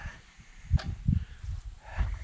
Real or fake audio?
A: real